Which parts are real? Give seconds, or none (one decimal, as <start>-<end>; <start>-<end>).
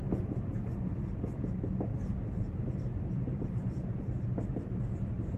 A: 0.0-2.1